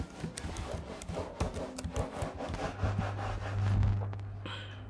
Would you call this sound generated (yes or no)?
no